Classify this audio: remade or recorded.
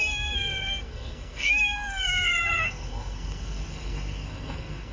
remade